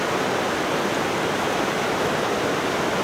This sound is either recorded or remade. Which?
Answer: recorded